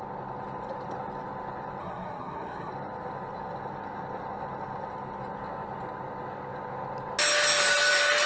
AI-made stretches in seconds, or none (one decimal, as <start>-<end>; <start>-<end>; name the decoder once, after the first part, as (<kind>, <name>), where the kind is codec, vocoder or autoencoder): 1.8-2.7 (codec, SNAC)